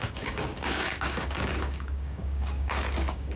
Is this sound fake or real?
fake